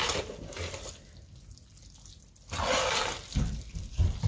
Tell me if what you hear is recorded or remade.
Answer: recorded